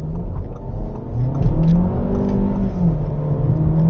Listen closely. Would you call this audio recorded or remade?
recorded